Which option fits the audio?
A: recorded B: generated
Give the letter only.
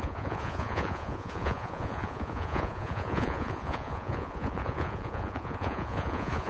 B